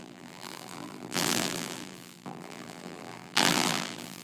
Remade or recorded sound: remade